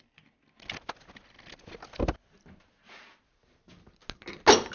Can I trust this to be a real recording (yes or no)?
yes